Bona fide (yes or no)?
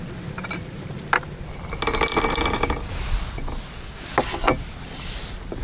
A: yes